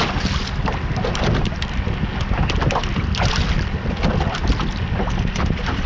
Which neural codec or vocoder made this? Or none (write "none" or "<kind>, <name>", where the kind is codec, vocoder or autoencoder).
none